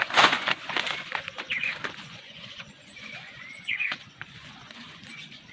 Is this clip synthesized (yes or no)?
yes